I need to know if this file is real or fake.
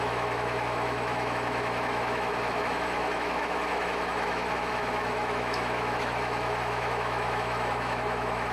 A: fake